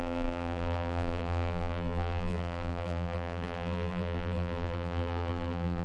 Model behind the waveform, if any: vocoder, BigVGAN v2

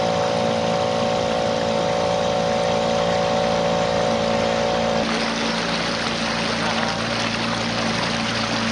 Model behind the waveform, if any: none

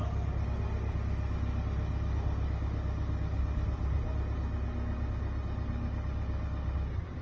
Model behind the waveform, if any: none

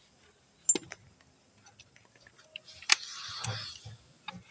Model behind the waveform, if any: none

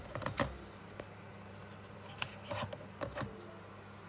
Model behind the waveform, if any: none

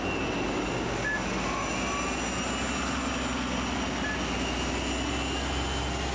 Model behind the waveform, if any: none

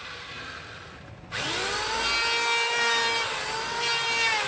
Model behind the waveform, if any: none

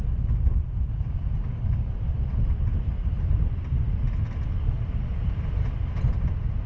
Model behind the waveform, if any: none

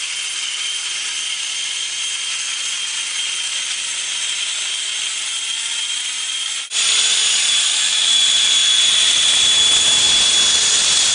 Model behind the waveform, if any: none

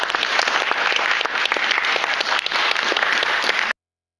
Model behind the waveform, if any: none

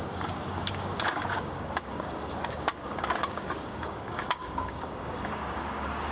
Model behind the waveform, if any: codec, DAC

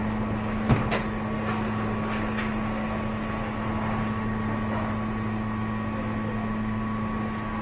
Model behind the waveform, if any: none